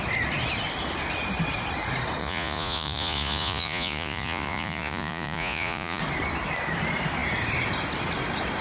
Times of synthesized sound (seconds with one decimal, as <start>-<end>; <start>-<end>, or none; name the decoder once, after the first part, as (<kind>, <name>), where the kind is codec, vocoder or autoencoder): 2.2-6.0 (vocoder, Vocos)